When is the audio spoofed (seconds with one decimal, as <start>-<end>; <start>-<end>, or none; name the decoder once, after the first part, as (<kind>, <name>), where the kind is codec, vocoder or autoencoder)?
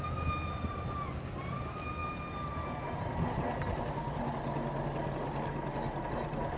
none